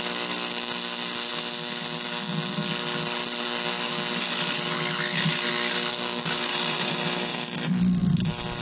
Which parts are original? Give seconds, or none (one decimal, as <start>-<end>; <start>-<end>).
0.0-5.9; 6.5-8.6